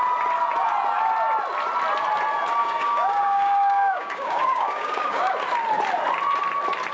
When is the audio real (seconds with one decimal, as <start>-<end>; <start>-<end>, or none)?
0.0-2.6; 5.3-6.9